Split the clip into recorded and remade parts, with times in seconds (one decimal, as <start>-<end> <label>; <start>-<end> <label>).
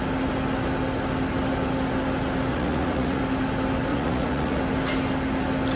0.0-2.5 recorded; 2.5-3.2 remade; 3.2-3.9 recorded; 3.9-4.6 remade; 4.6-5.8 recorded